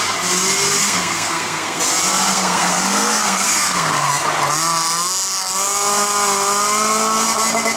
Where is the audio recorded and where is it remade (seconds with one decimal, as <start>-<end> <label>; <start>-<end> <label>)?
0.0-0.8 recorded; 0.8-1.8 remade; 1.8-2.3 recorded; 2.3-4.1 remade; 4.1-7.8 recorded